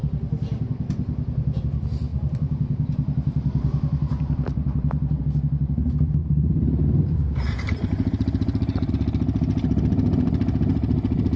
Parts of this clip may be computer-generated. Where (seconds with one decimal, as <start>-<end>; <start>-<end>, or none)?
2.1-5.2; 6.2-8.9